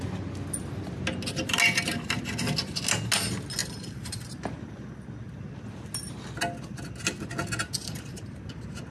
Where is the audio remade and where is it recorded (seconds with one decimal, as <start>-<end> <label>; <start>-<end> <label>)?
0.0-3.6 recorded; 3.6-4.4 remade; 4.4-7.8 recorded; 7.8-8.5 remade; 8.5-8.9 recorded